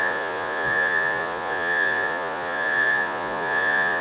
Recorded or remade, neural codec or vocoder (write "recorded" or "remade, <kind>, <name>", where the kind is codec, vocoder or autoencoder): remade, vocoder, Vocos